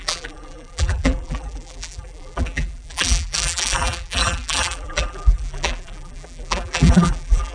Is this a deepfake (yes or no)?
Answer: yes